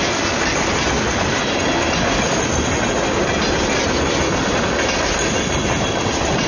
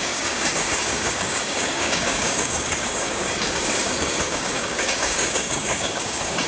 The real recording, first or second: first